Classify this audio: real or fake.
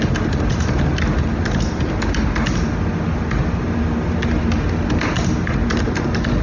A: real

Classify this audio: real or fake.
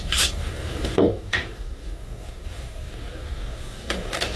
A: fake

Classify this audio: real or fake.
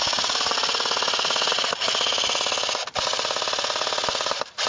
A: real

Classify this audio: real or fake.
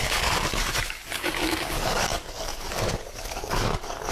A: fake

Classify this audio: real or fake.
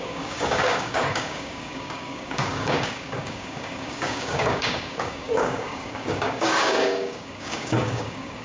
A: fake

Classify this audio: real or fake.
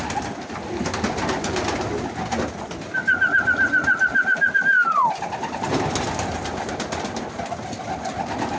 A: real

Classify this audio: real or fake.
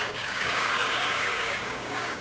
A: fake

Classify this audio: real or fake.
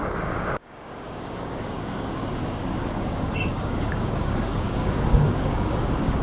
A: fake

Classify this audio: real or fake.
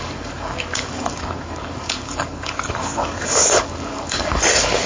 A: fake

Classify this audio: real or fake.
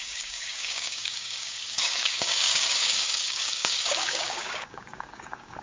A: fake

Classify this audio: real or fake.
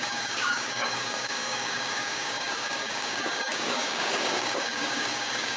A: fake